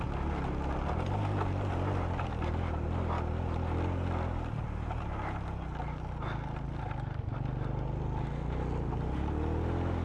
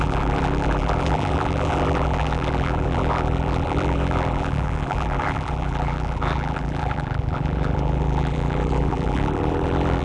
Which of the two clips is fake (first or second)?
second